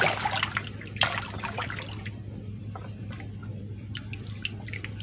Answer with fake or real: real